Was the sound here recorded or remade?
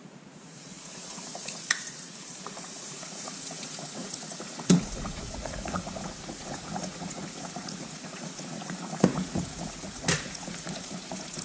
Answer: remade